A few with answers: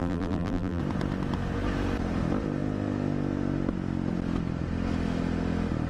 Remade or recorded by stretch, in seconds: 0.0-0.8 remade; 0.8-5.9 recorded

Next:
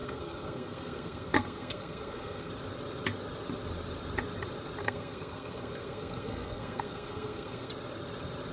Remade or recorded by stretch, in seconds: 0.0-2.5 remade; 2.5-4.8 recorded; 4.8-7.7 remade; 7.7-8.5 recorded

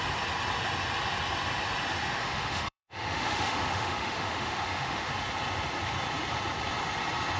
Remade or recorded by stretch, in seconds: 0.0-2.2 recorded; 2.2-5.1 remade; 5.1-7.4 recorded

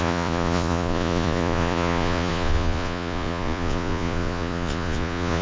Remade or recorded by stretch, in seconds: 0.0-5.4 remade

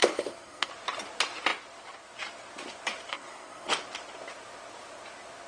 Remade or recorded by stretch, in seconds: 0.0-0.7 remade; 0.7-3.1 recorded; 3.1-3.7 remade; 3.7-5.5 recorded